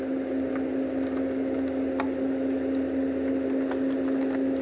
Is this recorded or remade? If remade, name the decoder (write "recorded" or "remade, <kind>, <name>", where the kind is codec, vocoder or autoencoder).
recorded